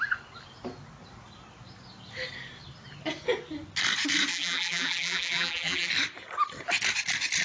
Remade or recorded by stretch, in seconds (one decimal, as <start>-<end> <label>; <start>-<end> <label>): 0.0-4.3 recorded; 4.3-5.9 remade; 5.9-7.4 recorded